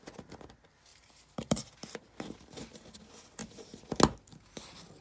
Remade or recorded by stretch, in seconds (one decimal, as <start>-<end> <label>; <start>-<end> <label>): 0.0-0.9 recorded; 0.9-2.0 remade; 2.0-5.0 recorded